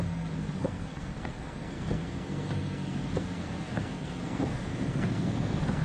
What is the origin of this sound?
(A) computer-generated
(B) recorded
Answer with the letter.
A